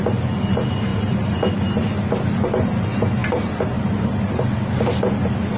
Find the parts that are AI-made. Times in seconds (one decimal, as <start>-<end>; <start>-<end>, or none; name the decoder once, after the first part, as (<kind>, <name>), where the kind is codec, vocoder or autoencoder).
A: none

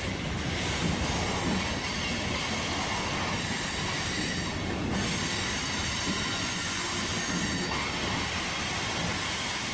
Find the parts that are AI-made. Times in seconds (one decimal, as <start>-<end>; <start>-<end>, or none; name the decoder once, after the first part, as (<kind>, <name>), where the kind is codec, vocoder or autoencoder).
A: 6.3-7.1 (vocoder, Vocos)

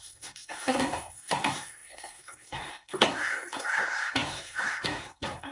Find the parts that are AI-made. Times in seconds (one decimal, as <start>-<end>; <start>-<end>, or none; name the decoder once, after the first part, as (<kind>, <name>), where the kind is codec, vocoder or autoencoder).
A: 0.0-5.5 (codec, SNAC)

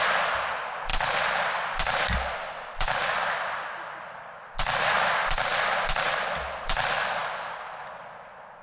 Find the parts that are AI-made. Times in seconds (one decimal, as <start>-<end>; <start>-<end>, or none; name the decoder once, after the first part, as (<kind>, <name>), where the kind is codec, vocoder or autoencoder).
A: none